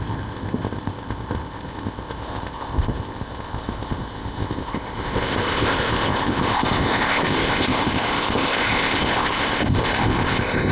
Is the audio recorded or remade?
remade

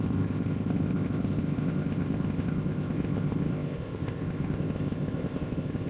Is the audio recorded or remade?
remade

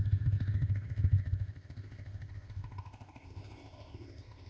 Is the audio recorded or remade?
remade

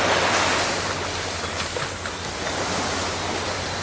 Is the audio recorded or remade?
recorded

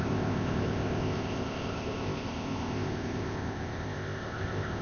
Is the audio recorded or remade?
remade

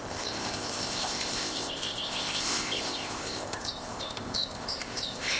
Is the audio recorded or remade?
remade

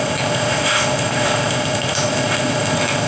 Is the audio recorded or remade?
remade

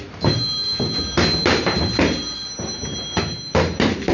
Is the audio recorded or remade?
recorded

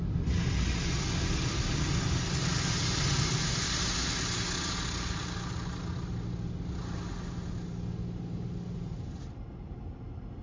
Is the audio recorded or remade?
recorded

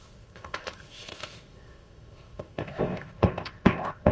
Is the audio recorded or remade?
remade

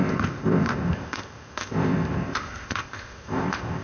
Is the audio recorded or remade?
remade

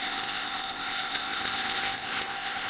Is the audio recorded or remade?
remade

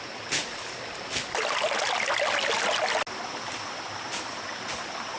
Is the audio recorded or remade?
recorded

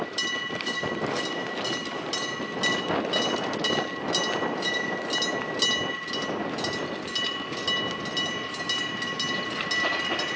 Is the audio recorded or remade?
recorded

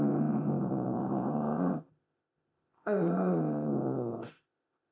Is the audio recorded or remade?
remade